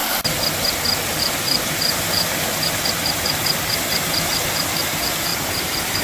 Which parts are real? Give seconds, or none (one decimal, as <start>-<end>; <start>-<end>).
0.0-1.2